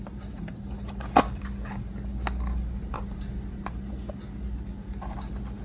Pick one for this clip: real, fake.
real